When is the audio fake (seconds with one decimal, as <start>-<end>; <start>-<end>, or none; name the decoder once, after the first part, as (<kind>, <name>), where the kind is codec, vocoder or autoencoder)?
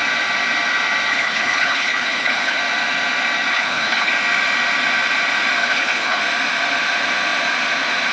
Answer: 1.1-2.6 (codec, HILCodec); 3.5-4.1; 5.6-6.2